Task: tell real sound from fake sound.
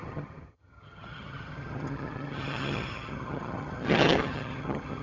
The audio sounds fake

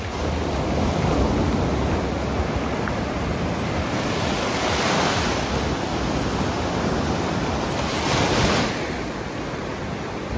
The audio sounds real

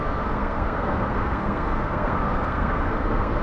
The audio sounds fake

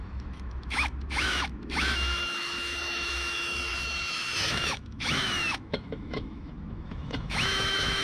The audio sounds fake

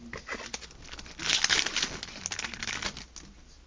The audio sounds real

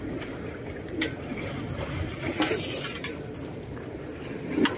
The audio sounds real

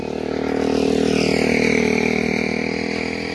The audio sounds real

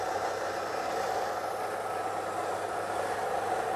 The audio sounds real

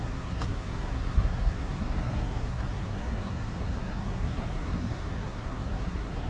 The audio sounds fake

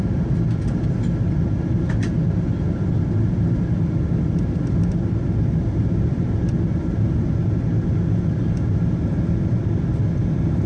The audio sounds real